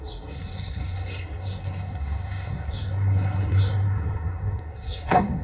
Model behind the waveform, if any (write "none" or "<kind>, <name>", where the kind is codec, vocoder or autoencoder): codec, SNAC